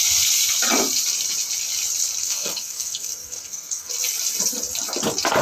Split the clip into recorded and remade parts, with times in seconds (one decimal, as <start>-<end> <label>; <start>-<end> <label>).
0.0-2.2 recorded; 2.2-3.9 remade; 3.9-5.4 recorded